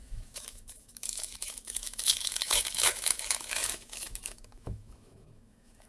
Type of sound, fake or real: fake